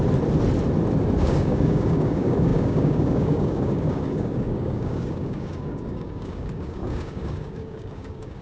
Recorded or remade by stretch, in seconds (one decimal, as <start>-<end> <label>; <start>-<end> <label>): 0.0-1.2 recorded; 1.2-8.4 remade